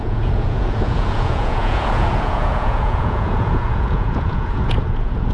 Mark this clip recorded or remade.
remade